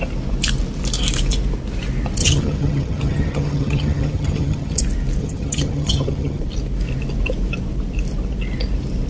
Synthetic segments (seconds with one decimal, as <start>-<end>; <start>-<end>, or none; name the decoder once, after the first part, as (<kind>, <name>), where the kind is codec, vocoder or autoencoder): 2.2-4.8 (vocoder, HiFi-GAN); 5.2-6.4